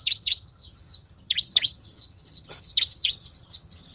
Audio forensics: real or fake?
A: fake